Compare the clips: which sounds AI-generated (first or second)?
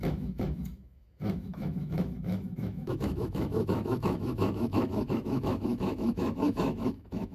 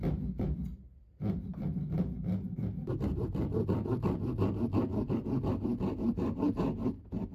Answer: first